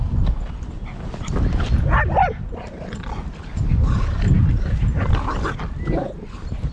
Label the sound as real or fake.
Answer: real